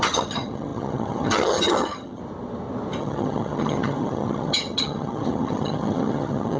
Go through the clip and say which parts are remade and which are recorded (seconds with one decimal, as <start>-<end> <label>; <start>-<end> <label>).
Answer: 0.0-2.2 remade; 2.2-3.0 recorded; 3.0-6.6 remade